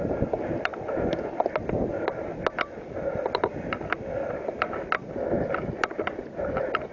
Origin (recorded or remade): recorded